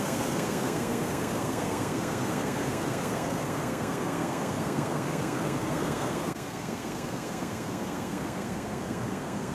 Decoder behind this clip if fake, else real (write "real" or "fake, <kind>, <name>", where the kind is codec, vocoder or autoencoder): fake, codec, SNAC